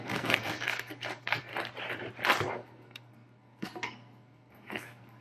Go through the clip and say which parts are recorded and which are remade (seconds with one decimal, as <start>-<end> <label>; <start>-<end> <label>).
0.0-1.5 remade; 1.5-2.5 recorded; 2.5-5.2 remade